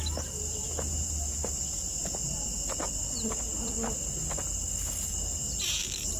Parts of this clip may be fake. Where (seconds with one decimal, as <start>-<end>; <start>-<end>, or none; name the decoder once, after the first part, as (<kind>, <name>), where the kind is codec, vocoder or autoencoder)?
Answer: 5.4-6.2 (vocoder, BigVGAN v2)